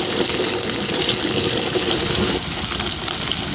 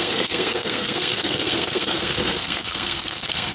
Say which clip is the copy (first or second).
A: second